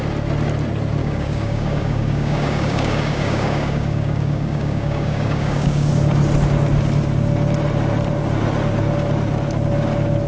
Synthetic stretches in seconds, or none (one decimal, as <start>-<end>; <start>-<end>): 1.0-5.9